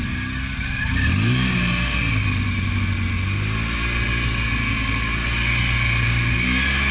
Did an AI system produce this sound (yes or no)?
no